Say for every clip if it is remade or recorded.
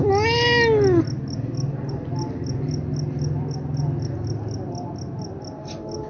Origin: recorded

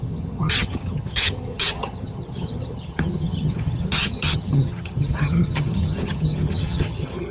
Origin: remade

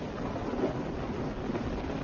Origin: recorded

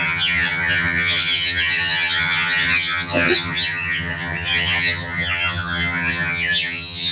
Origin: remade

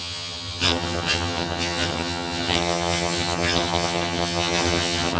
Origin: remade